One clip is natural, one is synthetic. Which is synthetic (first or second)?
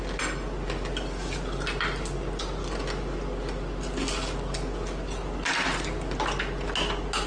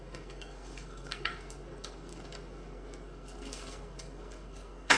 second